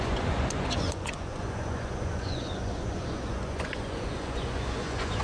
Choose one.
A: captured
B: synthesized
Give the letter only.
B